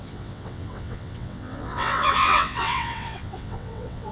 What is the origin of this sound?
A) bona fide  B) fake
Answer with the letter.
B